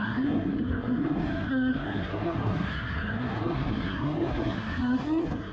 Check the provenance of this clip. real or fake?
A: fake